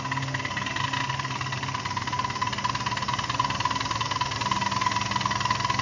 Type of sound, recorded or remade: recorded